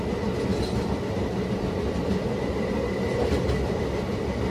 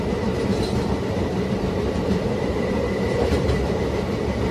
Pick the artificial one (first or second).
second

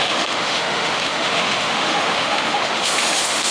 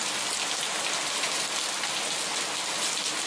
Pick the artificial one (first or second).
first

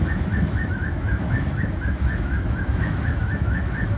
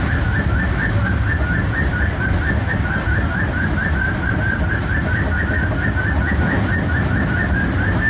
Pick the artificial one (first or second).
first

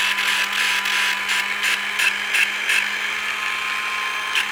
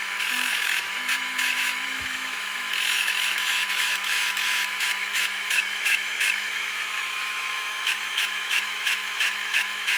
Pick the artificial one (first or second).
second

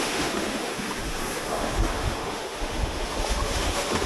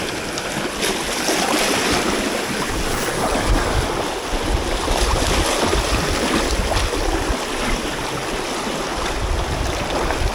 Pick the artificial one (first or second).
first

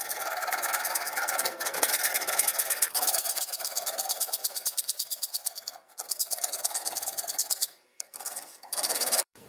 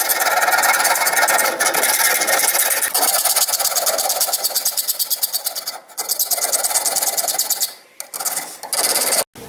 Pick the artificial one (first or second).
first